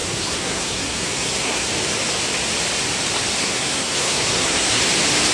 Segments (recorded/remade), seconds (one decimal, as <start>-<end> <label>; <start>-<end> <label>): 0.0-1.7 remade; 1.7-3.4 recorded; 3.4-4.8 remade; 4.8-5.3 recorded